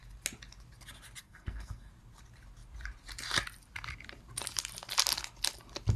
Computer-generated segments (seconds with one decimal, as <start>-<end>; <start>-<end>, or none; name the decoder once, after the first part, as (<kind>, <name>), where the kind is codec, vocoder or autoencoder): 1.2-1.9 (codec, SNAC)